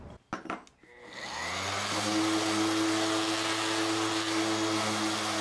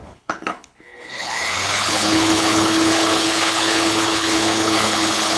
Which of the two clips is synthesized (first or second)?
second